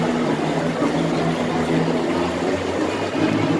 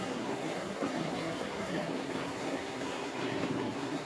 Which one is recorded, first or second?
first